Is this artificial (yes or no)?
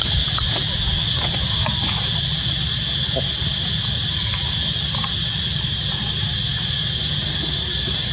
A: no